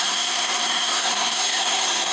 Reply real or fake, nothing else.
fake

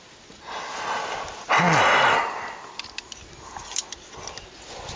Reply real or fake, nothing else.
real